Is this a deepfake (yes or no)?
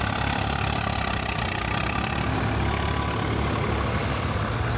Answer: no